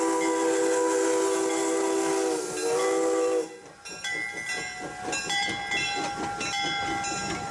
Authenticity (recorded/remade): recorded